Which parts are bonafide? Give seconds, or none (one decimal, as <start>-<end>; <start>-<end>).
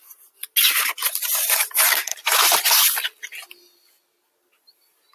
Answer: 0.0-2.1; 2.7-5.1